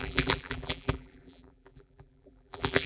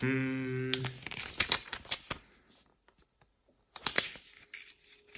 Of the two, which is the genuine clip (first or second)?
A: second